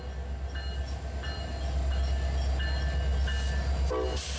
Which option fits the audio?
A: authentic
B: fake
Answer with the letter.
A